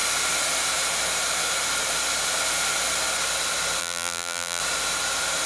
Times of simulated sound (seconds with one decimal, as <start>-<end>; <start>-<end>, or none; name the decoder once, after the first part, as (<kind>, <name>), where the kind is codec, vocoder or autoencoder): 3.8-4.6 (vocoder, BigVGAN v2)